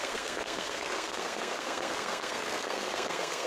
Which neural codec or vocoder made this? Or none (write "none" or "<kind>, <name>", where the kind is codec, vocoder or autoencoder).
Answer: codec, SNAC